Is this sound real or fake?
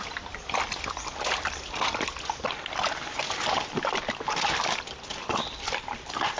real